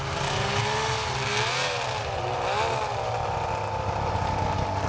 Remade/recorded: recorded